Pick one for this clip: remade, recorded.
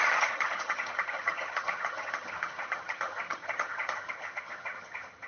remade